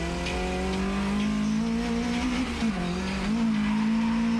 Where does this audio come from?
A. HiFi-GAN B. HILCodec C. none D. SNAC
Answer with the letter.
C